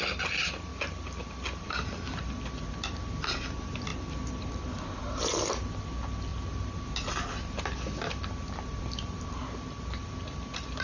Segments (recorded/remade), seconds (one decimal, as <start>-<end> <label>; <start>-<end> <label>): 0.0-10.8 recorded